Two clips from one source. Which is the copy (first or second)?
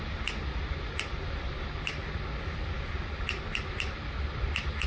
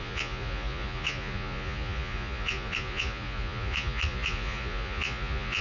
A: second